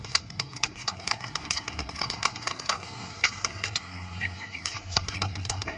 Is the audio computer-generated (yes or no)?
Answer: yes